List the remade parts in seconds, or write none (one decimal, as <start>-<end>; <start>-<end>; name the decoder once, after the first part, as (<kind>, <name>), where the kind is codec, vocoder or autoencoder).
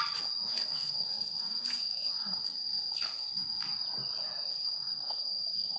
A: 0.5-3.7 (codec, SNAC); 4.5-5.8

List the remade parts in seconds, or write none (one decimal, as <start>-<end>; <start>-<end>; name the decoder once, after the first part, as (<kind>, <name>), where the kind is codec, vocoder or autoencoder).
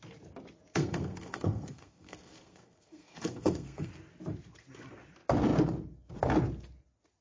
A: 0.7-3.9 (codec, SNAC)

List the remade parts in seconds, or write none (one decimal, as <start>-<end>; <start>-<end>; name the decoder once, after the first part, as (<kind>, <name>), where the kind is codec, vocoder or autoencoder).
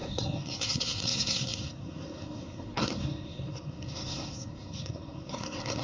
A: 0.0-5.8 (codec, SNAC)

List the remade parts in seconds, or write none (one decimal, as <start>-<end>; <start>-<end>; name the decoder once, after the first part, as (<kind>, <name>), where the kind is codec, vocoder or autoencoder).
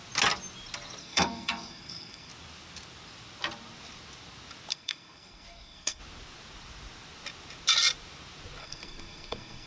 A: 1.0-2.3 (codec, SNAC); 4.7-6.0; 8.6-9.7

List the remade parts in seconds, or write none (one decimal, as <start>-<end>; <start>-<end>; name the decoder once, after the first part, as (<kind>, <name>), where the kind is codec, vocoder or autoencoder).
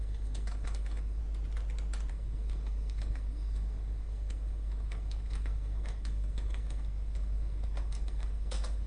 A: 0.0-1.2 (codec, SNAC); 2.1-8.9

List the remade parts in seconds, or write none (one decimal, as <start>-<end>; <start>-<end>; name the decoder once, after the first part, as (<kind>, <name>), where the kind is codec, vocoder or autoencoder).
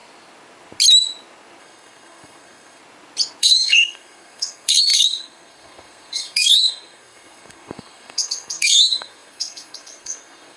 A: 1.6-2.8 (codec, SNAC); 3.4-10.6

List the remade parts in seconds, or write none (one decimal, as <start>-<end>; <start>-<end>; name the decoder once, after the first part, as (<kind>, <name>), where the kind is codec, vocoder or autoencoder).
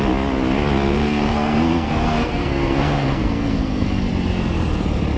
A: 0.9-4.0 (codec, SNAC)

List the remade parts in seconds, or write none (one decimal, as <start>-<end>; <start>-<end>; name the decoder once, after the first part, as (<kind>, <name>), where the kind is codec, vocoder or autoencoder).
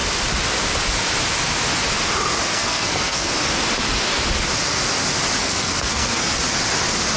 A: 2.5-3.3 (codec, SNAC); 5.4-6.4